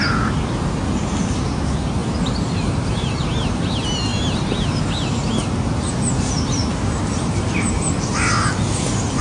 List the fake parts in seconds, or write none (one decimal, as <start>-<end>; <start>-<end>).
6.7-7.8